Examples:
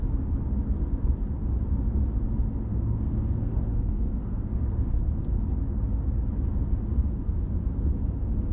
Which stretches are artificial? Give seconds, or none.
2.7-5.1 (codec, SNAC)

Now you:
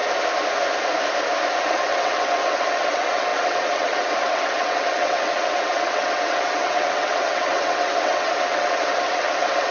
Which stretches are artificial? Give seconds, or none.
1.5-9.7 (vocoder, WaveNeXt)

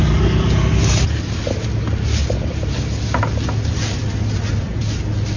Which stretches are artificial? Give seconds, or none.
none

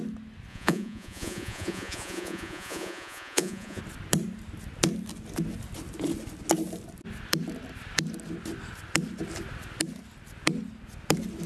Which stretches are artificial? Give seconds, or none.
0.5-3.8 (vocoder, Vocos)

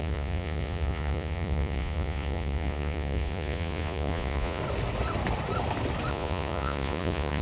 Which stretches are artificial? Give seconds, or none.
0.0-4.6 (vocoder, Vocos); 6.1-7.4

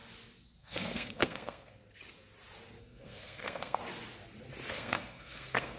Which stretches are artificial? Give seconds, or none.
0.6-1.8 (codec, SNAC); 2.8-3.8; 4.7-5.8

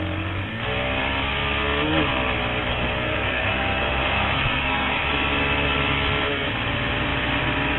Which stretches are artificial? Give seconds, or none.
2.7-5.1 (codec, SNAC)

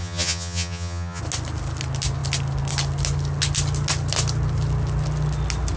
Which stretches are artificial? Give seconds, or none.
0.0-1.2 (vocoder, HiFi-GAN)